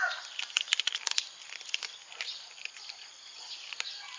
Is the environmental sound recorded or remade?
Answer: recorded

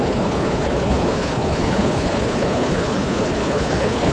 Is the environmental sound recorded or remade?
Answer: remade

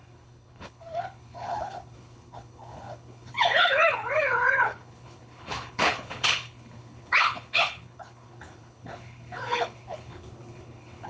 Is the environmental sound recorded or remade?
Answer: remade